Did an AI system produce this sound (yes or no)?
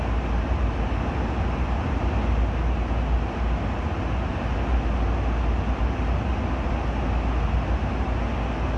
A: no